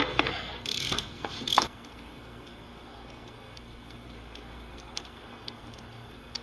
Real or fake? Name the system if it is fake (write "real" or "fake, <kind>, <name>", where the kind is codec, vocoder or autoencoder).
fake, codec, SNAC